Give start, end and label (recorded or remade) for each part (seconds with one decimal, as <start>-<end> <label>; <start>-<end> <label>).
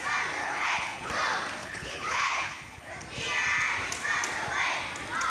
0.0-0.4 recorded; 0.4-1.1 remade; 1.1-1.6 recorded; 1.6-2.9 remade; 2.9-5.3 recorded